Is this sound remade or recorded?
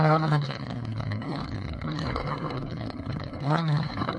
remade